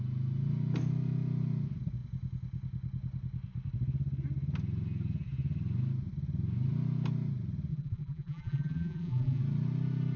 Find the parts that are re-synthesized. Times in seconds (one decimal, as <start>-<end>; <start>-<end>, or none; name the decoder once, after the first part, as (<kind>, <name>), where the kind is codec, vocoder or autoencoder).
7.7-9.4 (vocoder, BigVGAN v2)